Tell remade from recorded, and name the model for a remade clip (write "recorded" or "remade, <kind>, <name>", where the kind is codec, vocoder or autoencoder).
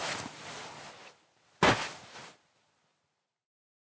recorded